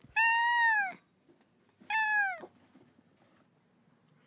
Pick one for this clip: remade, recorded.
recorded